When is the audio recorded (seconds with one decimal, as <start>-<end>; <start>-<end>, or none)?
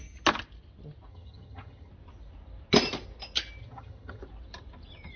0.0-1.1; 1.9-3.6; 4.2-5.2